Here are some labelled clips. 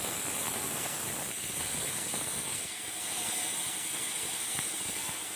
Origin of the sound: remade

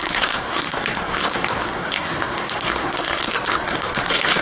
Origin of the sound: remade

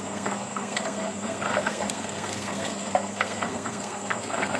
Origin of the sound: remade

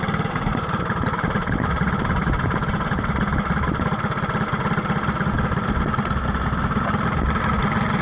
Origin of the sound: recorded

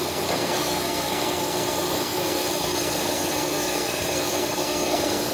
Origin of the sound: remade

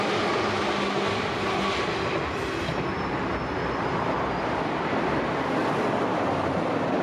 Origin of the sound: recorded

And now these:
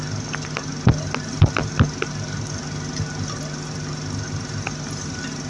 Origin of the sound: recorded